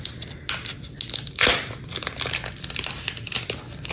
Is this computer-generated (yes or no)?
no